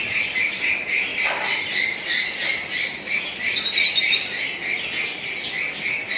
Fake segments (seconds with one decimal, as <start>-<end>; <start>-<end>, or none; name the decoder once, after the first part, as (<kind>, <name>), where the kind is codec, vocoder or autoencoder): 1.1-4.8 (vocoder, BigVGAN v2)